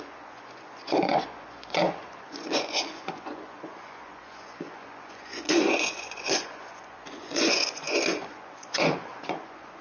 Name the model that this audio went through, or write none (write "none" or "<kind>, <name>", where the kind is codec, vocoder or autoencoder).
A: vocoder, Vocos